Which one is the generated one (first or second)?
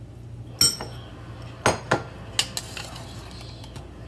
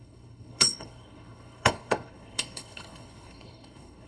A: second